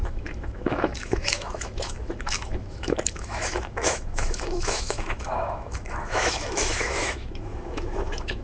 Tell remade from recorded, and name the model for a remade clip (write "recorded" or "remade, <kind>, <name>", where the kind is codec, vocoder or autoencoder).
remade, autoencoder, DAC-VAE